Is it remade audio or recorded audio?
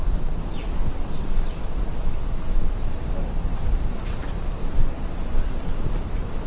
recorded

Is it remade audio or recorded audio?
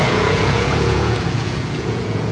remade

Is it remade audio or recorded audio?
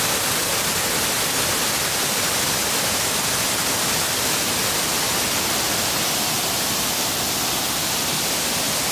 recorded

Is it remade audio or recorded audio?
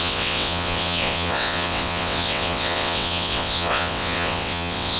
remade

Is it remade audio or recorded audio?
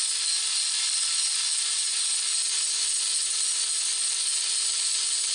recorded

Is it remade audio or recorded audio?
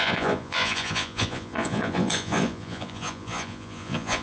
remade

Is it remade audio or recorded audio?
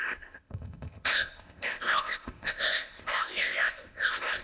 remade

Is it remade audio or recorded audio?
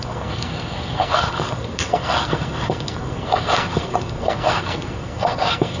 remade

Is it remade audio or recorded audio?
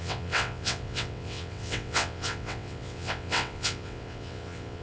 remade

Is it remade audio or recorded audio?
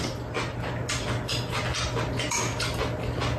recorded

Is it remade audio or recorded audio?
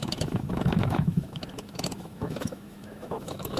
remade